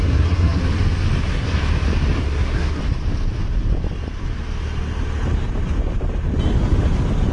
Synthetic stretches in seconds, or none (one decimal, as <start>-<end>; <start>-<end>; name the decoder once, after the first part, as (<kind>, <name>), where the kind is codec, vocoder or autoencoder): 0.0-0.6 (codec, SNAC); 1.2-1.6; 2.2-2.8